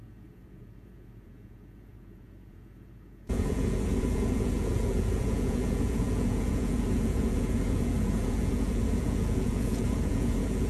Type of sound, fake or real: fake